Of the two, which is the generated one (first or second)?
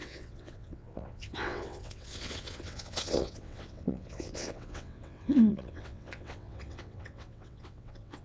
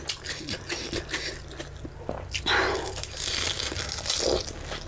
first